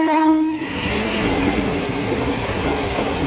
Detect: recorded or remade remade